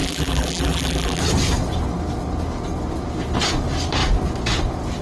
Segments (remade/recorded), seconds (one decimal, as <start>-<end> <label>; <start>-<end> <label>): 0.0-1.2 remade; 1.2-5.0 recorded